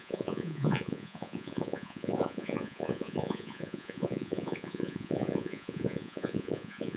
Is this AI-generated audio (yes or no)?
yes